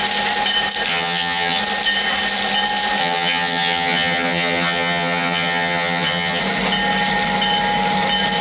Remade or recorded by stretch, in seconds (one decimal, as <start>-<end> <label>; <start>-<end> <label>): 0.0-0.9 recorded; 0.9-1.6 remade; 1.6-3.0 recorded; 3.0-6.4 remade; 6.4-8.4 recorded